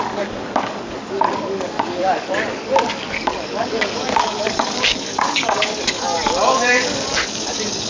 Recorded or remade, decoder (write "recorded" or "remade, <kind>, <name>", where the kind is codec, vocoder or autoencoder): remade, codec, DAC